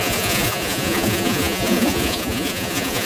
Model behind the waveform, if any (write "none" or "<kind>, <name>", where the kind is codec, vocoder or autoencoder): vocoder, Vocos